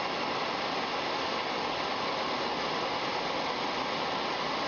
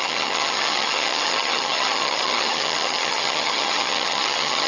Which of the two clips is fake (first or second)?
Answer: second